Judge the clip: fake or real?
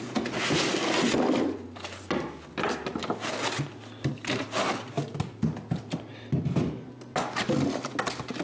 real